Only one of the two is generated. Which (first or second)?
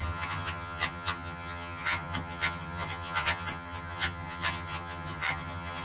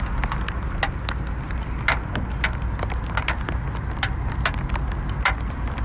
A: first